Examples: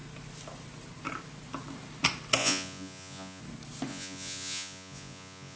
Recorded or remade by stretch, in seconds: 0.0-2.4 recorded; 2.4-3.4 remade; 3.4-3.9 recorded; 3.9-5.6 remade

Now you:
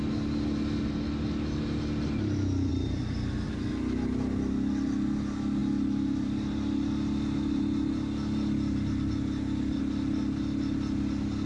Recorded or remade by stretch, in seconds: 0.0-2.7 recorded; 2.7-3.5 remade; 3.5-11.5 recorded

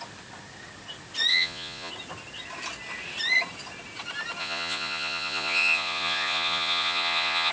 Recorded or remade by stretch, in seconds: 0.0-1.3 recorded; 1.3-1.9 remade; 1.9-4.4 recorded; 4.4-7.5 remade

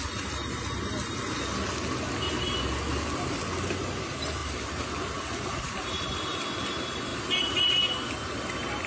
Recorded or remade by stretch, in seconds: 0.0-7.1 recorded; 7.1-7.7 remade; 7.7-8.9 recorded

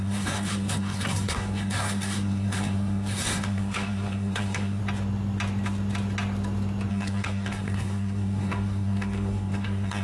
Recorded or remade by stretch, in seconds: 0.0-4.8 remade; 4.8-6.9 recorded; 6.9-10.0 remade

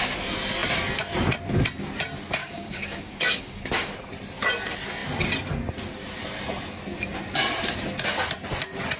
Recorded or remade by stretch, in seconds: 0.0-2.4 recorded; 2.4-3.9 remade; 3.9-9.0 recorded

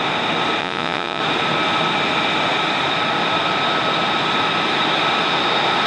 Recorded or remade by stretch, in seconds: 0.0-0.6 recorded; 0.6-1.2 remade; 1.2-5.9 recorded